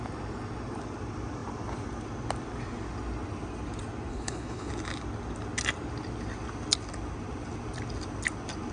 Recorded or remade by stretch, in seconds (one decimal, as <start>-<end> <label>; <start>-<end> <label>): 0.0-4.1 recorded; 4.1-4.7 remade; 4.7-8.7 recorded